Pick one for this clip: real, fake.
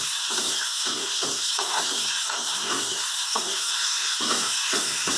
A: fake